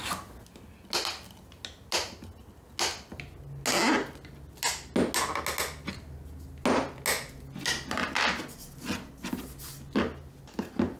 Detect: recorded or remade recorded